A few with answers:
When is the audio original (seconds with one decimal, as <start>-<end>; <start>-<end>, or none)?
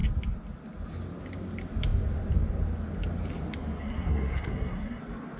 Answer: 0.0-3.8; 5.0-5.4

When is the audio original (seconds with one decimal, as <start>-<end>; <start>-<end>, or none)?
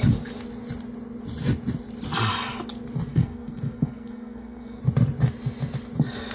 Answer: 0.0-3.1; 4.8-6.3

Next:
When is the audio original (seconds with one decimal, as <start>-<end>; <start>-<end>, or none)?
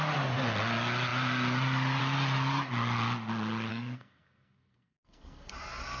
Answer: 0.0-3.7; 5.5-6.0